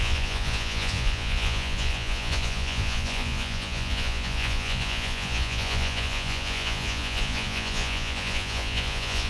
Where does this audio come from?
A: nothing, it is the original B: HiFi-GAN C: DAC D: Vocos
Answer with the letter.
D